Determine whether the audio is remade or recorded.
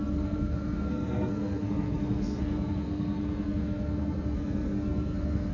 remade